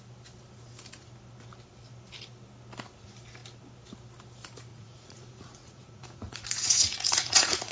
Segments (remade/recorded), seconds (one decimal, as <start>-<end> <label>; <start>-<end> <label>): 0.0-4.7 recorded; 4.7-7.7 remade